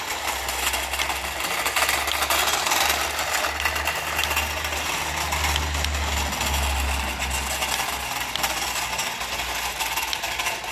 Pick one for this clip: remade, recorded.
recorded